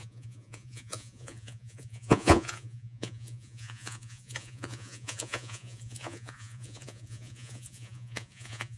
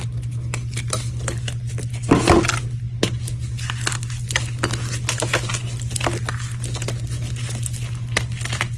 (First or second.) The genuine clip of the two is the second